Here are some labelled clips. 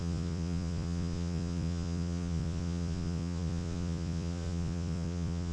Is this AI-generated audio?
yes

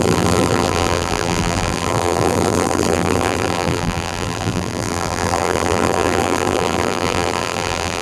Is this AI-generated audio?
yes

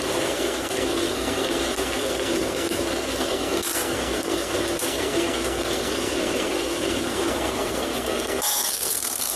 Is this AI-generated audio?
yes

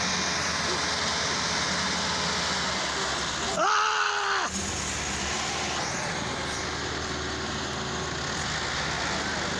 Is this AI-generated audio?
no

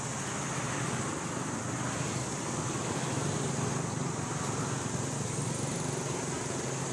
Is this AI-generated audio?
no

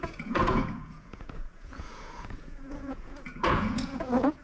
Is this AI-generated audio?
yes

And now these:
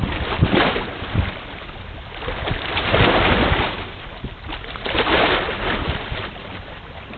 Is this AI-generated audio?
no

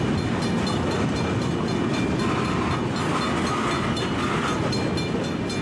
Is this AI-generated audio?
no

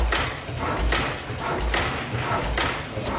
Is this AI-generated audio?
no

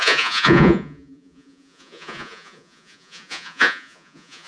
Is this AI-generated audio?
yes